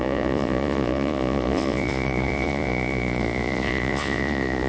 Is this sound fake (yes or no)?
yes